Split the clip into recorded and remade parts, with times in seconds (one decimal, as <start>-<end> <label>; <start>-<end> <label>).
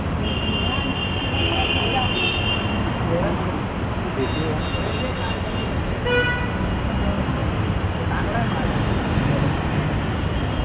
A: 0.0-7.4 recorded; 7.4-10.6 remade